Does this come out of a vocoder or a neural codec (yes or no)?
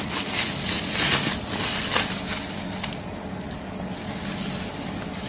no